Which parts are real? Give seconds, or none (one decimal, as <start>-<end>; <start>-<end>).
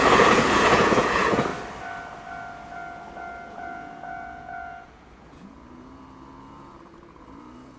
1.5-3.5